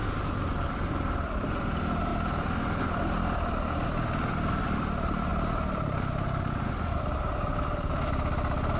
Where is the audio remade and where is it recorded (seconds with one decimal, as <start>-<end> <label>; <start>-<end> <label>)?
0.0-8.8 recorded